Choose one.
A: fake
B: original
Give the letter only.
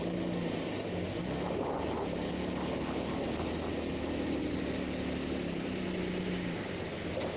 B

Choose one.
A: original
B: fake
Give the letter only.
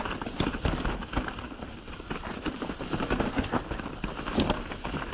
A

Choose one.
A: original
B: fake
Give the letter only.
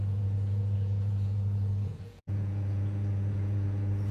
B